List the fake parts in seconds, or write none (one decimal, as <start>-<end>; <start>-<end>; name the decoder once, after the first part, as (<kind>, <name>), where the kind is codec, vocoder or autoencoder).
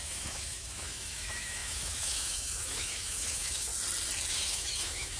0.0-3.7 (autoencoder, DAC-VAE); 4.3-5.2